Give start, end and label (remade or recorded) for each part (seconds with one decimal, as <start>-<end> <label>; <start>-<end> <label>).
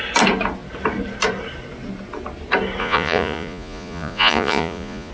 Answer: 0.0-2.8 recorded; 2.8-5.1 remade